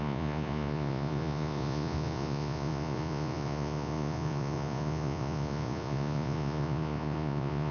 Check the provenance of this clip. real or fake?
fake